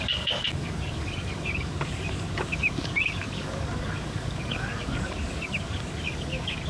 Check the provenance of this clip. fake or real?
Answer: fake